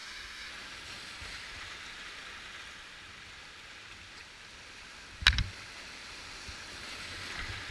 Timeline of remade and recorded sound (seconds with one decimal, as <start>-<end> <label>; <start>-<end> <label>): 0.0-0.5 remade; 0.5-7.7 recorded